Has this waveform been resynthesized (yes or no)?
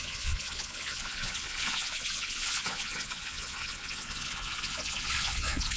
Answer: yes